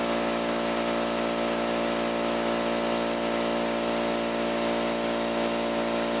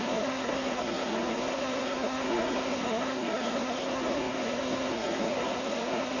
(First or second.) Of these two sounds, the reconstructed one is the second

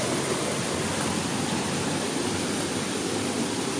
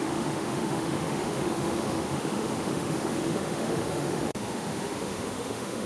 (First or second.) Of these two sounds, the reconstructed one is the second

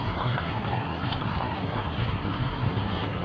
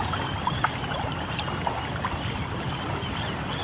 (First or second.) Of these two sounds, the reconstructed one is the first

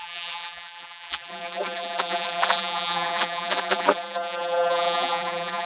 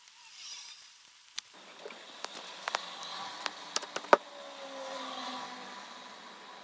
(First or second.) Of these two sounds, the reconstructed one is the first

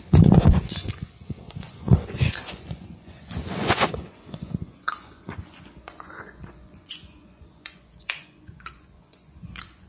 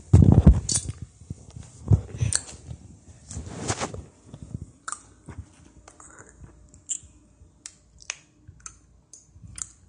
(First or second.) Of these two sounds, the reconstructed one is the first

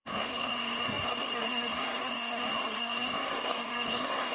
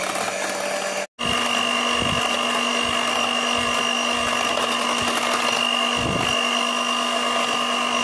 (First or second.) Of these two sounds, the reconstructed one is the first